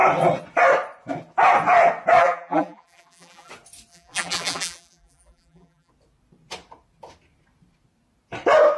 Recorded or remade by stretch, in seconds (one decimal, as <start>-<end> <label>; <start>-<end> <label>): 0.0-2.2 recorded; 2.2-3.5 remade; 3.5-3.9 recorded; 3.9-5.9 remade; 5.9-8.8 recorded